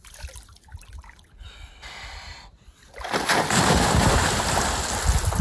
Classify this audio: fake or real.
real